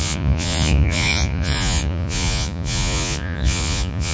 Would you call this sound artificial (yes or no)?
yes